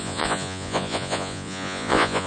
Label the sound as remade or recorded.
remade